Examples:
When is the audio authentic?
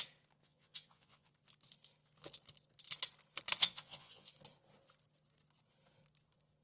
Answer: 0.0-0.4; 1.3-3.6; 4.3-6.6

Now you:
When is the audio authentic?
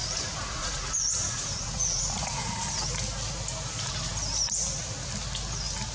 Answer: 2.6-5.9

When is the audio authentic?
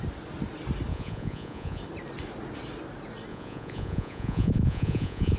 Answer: 0.0-0.9; 1.8-3.3